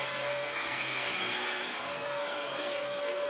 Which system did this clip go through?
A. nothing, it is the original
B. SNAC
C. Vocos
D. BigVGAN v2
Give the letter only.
B